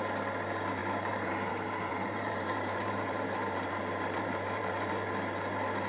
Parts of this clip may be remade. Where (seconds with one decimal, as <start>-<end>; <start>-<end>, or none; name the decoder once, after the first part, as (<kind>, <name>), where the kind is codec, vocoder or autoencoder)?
0.8-1.5 (vocoder, BigVGAN v2); 1.9-4.9